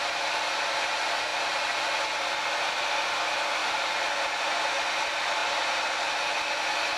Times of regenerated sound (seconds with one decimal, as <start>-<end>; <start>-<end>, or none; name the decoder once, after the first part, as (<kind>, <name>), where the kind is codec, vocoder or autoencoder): 0.0-1.3 (vocoder, BigVGAN v2); 2.7-3.6; 4.5-5.4